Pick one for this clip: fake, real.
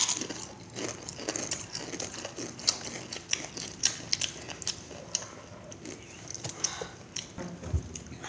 real